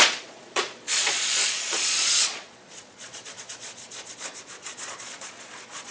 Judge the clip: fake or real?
fake